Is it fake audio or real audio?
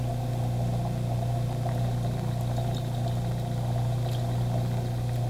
real